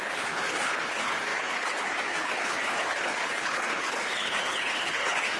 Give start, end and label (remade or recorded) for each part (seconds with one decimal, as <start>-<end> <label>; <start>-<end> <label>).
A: 0.0-5.4 remade